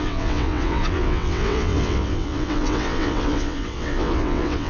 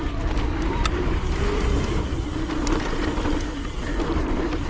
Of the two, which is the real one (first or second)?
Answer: second